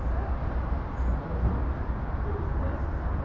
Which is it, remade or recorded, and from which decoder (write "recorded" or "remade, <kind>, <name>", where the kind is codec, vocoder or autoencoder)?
recorded